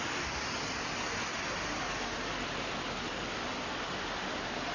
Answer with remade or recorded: recorded